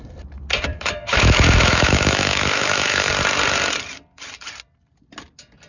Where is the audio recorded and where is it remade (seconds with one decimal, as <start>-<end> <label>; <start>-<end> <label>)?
0.0-0.7 recorded; 0.7-3.1 remade; 3.1-5.7 recorded